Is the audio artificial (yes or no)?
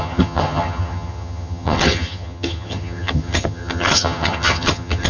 yes